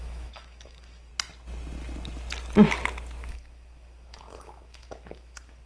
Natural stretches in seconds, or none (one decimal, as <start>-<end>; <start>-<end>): 1.1-3.3

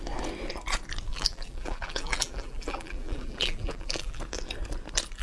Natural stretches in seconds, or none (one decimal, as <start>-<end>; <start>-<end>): 0.0-1.1; 4.2-5.2

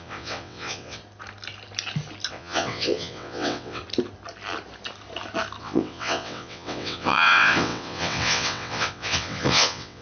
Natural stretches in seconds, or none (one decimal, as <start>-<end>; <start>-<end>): 1.0-2.3; 3.8-5.6